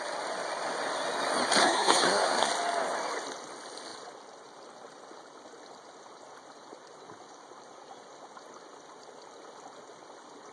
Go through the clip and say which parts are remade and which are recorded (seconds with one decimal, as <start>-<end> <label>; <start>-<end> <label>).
0.0-1.6 recorded; 1.6-2.5 remade; 2.5-10.5 recorded